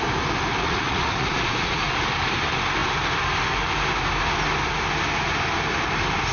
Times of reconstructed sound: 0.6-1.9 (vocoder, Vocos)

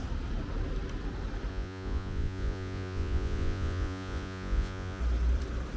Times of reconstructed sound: 1.5-5.0 (vocoder, Vocos)

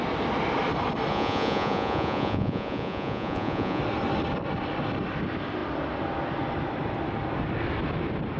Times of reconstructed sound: 1.1-3.8 (vocoder, Vocos)